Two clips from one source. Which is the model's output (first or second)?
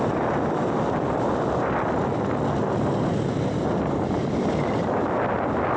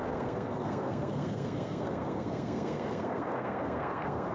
second